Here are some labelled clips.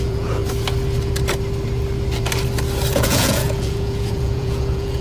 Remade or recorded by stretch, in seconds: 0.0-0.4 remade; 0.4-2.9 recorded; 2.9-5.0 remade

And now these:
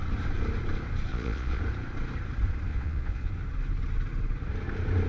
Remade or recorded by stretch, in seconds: 0.0-1.1 recorded; 1.1-1.6 remade; 1.6-2.7 recorded; 2.7-3.3 remade; 3.3-5.1 recorded

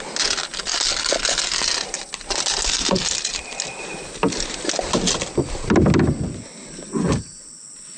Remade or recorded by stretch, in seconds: 0.0-8.0 recorded

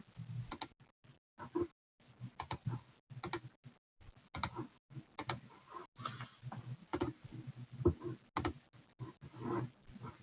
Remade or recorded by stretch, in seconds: 0.0-10.2 recorded

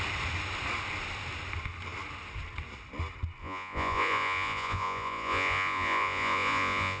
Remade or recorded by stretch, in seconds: 0.0-3.4 recorded; 3.4-7.0 remade